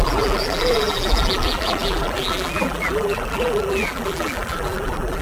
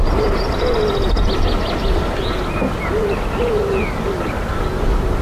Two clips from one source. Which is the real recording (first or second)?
second